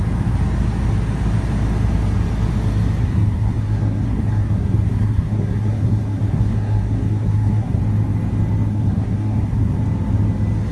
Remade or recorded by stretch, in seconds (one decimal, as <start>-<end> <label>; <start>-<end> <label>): 0.0-3.0 recorded; 3.0-7.8 remade; 7.8-8.7 recorded; 8.7-9.8 remade; 9.8-10.7 recorded